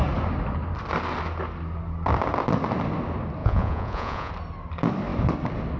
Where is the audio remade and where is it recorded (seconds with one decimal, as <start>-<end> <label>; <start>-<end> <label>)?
0.0-3.4 recorded; 3.4-4.3 remade; 4.3-5.8 recorded